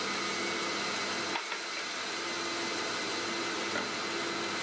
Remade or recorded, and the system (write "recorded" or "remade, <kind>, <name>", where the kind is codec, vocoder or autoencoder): recorded